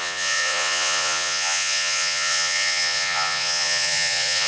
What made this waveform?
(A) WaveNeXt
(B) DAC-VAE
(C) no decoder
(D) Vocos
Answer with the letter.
D